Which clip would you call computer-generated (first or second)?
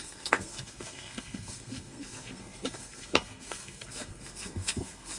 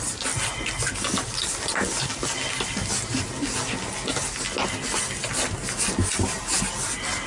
first